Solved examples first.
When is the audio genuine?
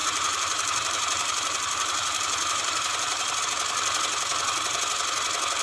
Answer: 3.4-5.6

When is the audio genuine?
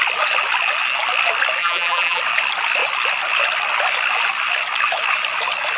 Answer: 0.0-1.6; 2.2-5.8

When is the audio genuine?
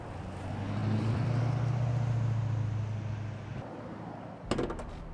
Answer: 0.0-0.8; 1.4-5.1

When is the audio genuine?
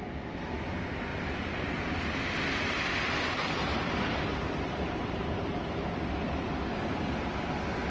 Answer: 0.0-3.6; 5.5-7.9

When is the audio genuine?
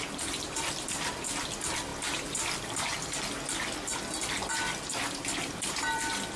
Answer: 1.9-4.5